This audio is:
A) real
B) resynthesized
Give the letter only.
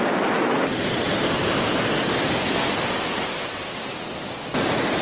A